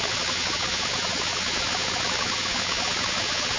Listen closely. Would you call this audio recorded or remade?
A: remade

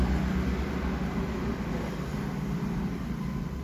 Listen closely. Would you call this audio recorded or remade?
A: recorded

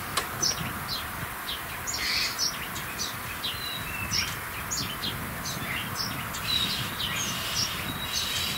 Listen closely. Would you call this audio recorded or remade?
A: recorded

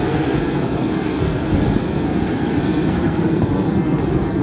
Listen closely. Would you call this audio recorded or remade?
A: remade